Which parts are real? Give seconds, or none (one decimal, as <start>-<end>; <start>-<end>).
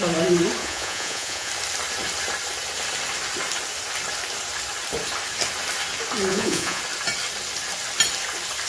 0.0-0.6; 1.5-6.3; 6.8-8.7